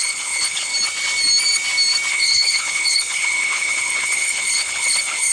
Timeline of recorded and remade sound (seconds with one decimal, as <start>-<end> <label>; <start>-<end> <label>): 0.0-0.7 remade; 0.7-2.1 recorded; 2.1-5.3 remade